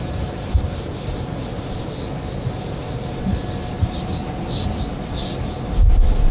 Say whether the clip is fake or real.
real